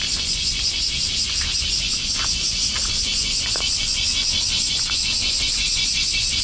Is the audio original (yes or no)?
no